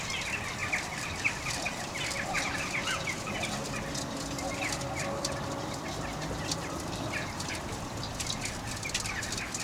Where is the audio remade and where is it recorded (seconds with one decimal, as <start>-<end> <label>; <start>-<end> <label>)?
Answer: 0.0-0.6 recorded; 0.6-3.3 remade; 3.3-9.6 recorded